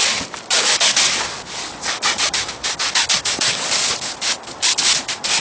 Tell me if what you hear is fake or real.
real